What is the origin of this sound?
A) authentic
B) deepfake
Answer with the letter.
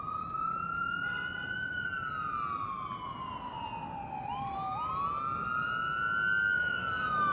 A